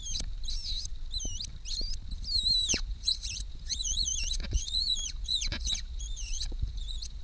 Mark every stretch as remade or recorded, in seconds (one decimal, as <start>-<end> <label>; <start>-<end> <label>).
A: 0.0-2.7 recorded; 2.7-7.2 remade